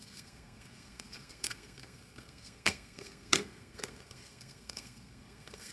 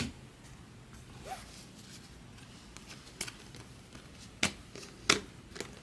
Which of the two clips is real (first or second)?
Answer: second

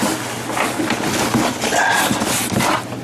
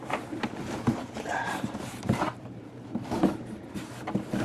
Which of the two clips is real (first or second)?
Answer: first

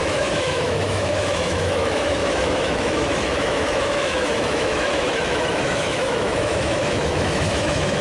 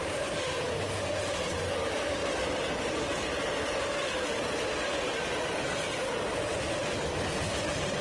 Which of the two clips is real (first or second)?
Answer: second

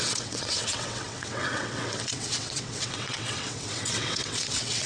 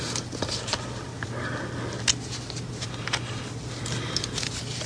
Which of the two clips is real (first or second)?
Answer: second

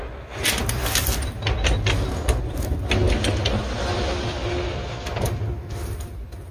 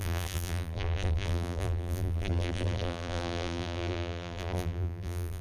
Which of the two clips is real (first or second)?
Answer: first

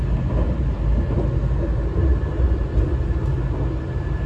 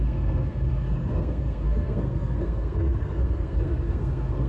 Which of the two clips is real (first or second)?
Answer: first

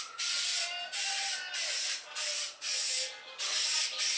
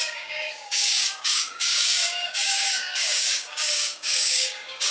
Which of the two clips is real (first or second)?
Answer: first